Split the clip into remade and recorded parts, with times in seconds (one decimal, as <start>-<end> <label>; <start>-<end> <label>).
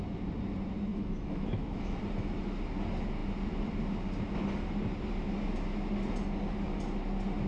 0.0-0.9 recorded; 0.9-2.0 remade; 2.0-7.5 recorded